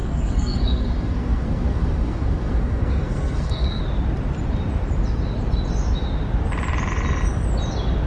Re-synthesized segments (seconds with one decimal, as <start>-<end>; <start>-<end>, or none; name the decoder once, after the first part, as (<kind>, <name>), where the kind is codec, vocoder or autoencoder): 0.0-3.8 (codec, SNAC)